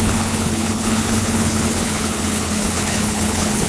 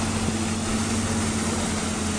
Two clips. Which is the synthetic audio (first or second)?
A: first